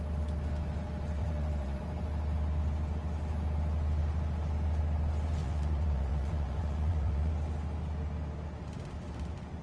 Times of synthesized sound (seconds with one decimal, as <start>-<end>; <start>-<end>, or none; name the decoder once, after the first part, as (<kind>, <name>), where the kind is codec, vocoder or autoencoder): 1.2-1.8 (vocoder, Vocos); 5.4-7.3